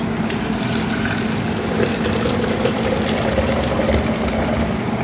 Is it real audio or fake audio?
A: fake